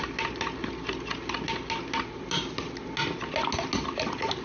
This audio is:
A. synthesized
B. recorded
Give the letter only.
B